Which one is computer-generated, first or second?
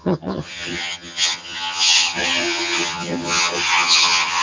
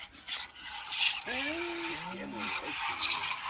first